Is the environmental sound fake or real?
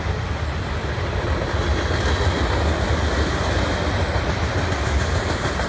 real